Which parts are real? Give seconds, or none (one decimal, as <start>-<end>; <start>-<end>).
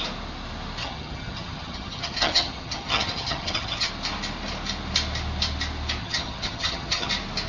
0.0-0.8; 3.9-6.0; 7.1-7.5